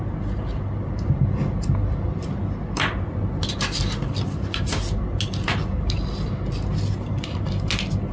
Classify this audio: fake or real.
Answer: real